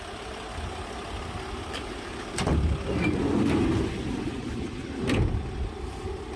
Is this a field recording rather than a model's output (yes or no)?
yes